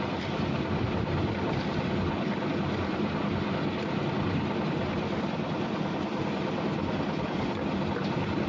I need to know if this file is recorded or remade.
recorded